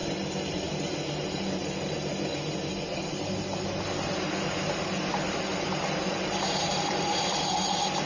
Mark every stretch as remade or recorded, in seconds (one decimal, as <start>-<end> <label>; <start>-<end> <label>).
0.0-8.1 recorded